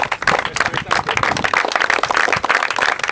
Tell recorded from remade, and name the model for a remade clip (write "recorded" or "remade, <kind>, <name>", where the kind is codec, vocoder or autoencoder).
recorded